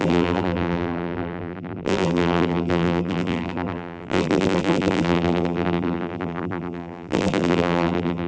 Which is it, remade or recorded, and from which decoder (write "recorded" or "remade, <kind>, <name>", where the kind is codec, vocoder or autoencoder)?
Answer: remade, vocoder, BigVGAN v2